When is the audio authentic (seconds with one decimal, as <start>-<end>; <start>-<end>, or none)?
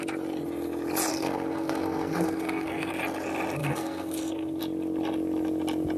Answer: 0.0-1.1; 2.9-3.6; 4.6-6.0